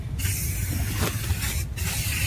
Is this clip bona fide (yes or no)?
yes